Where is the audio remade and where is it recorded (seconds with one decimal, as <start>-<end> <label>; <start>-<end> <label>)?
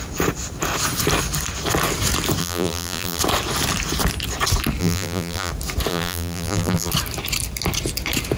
0.0-2.4 recorded; 2.4-3.2 remade; 3.2-4.8 recorded; 4.8-5.5 remade; 5.5-5.9 recorded; 5.9-6.9 remade; 6.9-8.4 recorded